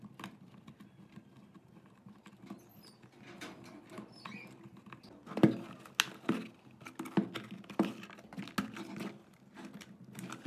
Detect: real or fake real